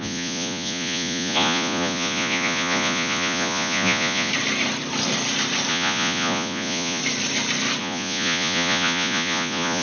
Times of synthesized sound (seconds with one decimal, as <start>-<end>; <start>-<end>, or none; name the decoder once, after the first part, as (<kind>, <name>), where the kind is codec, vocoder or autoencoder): 0.0-4.3 (vocoder, Vocos); 5.7-7.0; 7.8-9.8

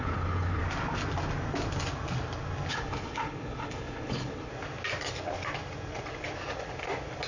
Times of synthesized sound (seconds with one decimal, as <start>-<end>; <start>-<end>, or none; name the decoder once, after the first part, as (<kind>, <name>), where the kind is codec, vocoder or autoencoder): 0.0-0.6 (codec, HILCodec); 2.7-4.5

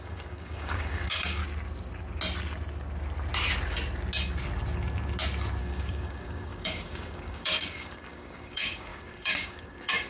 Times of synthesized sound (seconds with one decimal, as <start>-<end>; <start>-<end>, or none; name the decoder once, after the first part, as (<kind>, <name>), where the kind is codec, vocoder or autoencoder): 0.0-1.4 (codec, DAC); 5.6-10.1

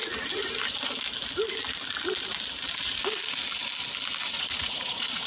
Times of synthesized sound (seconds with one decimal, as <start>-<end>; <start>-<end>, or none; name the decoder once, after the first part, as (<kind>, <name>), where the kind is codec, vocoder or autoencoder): 4.2-5.3 (vocoder, Vocos)

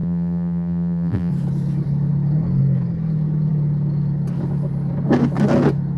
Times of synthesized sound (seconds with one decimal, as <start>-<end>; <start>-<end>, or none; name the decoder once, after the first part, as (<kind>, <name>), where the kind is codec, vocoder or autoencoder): 0.0-1.3 (vocoder, BigVGAN v2)

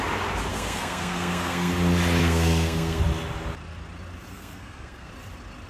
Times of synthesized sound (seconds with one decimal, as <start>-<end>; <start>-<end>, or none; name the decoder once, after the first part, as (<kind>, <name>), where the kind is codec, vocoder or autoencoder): 0.5-1.7 (codec, SNAC); 2.2-3.0; 4.3-5.1